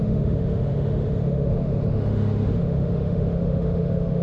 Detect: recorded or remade remade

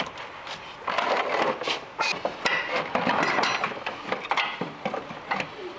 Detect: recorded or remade recorded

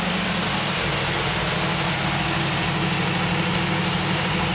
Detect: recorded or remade recorded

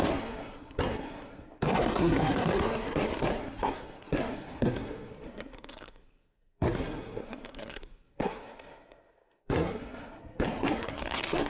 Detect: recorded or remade remade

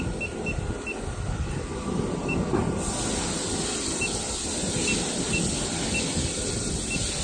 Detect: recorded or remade recorded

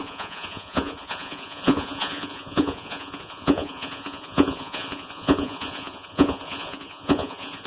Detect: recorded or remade remade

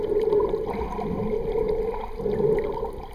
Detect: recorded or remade recorded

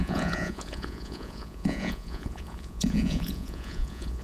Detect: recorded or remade remade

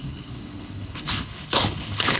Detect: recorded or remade remade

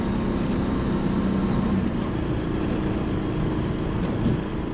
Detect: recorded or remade recorded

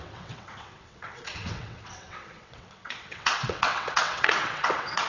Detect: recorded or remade remade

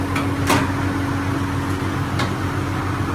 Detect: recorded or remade recorded